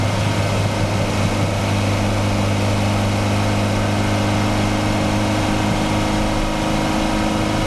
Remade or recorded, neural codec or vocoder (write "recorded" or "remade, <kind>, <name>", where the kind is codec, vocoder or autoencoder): recorded